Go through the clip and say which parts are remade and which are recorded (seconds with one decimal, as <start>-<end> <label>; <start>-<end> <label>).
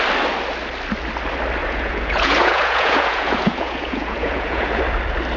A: 0.0-1.6 recorded; 1.6-4.8 remade; 4.8-5.4 recorded